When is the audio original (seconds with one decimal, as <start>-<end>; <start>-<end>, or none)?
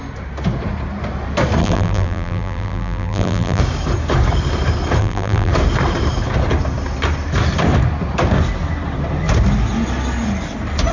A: 0.0-1.6; 3.6-5.0; 5.5-10.9